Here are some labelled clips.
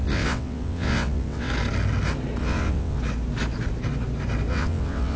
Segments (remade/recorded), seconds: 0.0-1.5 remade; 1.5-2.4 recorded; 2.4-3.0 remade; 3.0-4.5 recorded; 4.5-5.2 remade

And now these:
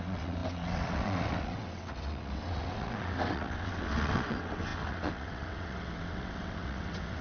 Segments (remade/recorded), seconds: 0.0-7.2 remade